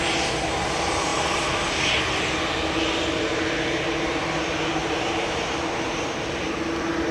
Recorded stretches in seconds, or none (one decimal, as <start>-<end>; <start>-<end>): 0.0-4.8; 6.4-7.1